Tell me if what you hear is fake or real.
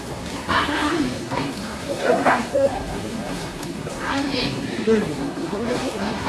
fake